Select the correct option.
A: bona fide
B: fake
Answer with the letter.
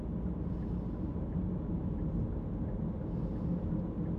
A